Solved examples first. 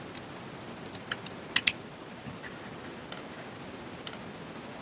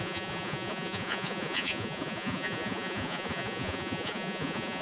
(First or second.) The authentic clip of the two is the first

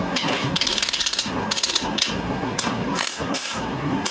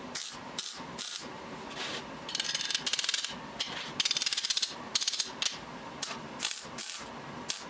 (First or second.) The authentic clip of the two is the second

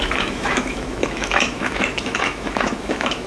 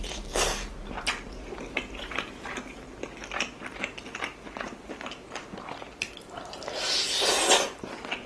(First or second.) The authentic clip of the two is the second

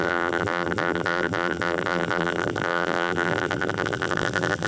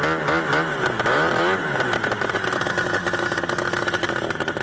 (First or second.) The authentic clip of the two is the second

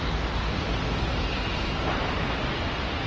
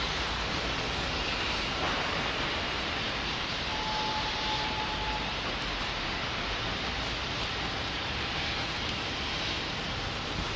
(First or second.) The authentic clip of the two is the first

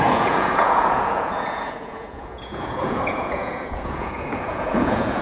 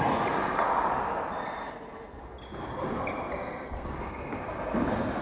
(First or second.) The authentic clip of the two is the second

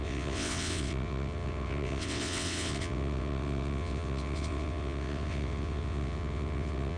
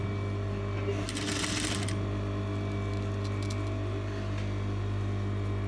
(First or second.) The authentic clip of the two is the second